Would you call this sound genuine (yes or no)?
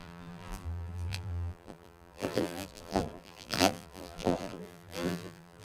no